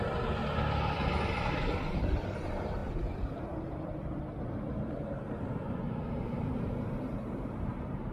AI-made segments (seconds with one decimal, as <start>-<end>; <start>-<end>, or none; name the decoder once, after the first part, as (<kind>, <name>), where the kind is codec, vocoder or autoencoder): 0.0-0.4 (vocoder, BigVGAN v2); 1.8-8.1